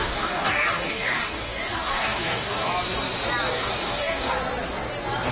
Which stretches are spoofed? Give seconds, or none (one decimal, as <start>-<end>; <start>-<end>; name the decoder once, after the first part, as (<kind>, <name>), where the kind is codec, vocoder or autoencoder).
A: 0.0-2.7 (codec, DAC); 3.5-4.3